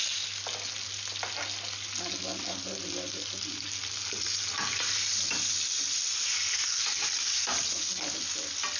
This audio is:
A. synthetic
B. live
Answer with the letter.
B